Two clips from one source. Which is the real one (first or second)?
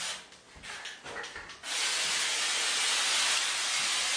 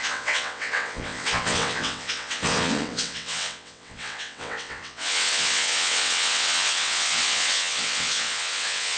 first